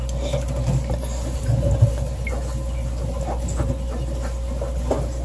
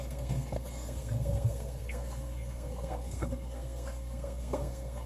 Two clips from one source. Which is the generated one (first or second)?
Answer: second